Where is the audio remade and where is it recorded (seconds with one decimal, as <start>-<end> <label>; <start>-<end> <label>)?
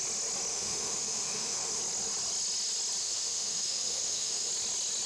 0.0-0.5 recorded; 0.5-1.8 remade; 1.8-3.0 recorded; 3.0-4.5 remade; 4.5-5.1 recorded